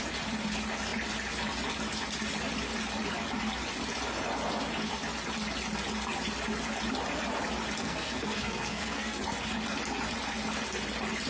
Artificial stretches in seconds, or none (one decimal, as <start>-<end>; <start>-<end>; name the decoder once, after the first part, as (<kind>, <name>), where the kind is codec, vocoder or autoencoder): 7.8-9.2 (codec, SNAC)